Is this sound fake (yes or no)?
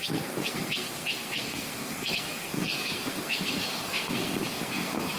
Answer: yes